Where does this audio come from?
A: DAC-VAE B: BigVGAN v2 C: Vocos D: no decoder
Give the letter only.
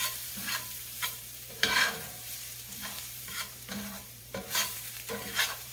B